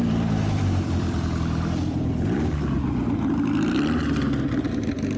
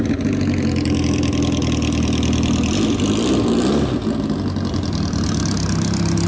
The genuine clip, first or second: second